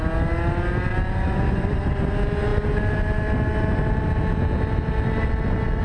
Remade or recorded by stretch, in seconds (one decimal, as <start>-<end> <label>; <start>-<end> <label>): 0.0-5.8 recorded